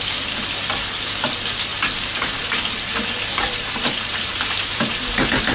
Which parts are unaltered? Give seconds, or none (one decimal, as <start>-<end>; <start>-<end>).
0.0-1.7; 5.0-5.5